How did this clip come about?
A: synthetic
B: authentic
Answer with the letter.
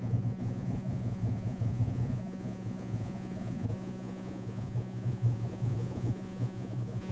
A